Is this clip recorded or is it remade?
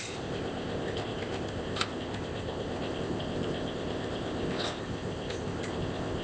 remade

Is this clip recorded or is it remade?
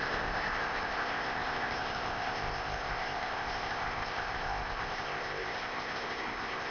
remade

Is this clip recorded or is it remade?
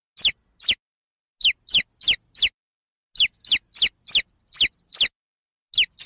recorded